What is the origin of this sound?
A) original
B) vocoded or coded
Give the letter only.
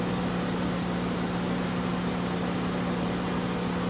A